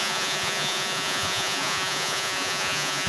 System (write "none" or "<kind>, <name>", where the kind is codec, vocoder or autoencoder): vocoder, Vocos